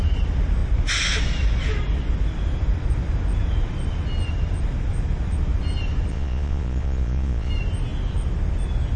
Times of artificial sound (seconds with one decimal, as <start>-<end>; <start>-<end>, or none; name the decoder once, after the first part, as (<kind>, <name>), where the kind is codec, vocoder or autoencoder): 6.1-7.5 (vocoder, Vocos)